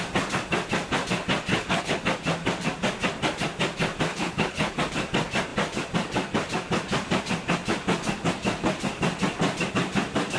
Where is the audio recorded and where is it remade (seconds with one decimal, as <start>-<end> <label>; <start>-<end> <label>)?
0.0-1.5 recorded; 1.5-2.0 remade; 2.0-4.1 recorded; 4.1-4.8 remade; 4.8-10.4 recorded